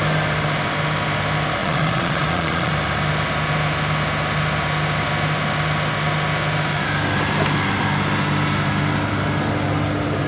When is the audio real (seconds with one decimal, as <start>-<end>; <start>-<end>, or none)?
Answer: 0.0-1.6; 2.7-10.3